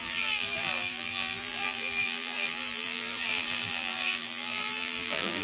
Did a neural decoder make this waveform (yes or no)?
yes